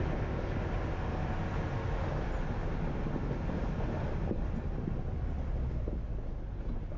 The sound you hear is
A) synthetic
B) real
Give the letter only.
B